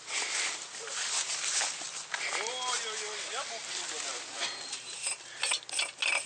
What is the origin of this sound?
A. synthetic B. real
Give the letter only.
B